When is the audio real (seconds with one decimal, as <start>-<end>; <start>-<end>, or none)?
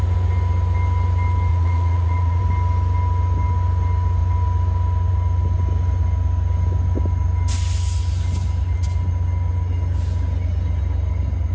0.0-1.5; 2.4-11.5